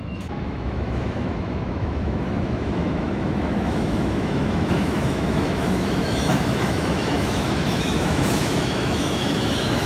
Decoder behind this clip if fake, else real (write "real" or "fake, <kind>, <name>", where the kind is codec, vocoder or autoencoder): fake, autoencoder, DAC-VAE